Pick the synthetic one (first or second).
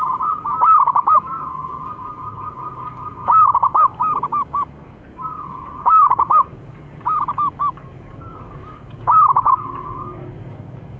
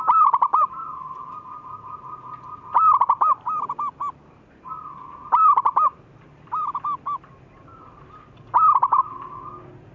first